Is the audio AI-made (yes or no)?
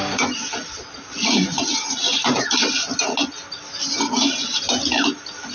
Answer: no